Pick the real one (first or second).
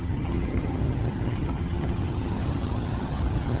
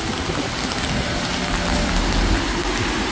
second